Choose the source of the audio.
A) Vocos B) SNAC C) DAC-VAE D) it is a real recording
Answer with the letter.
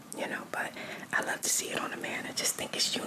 D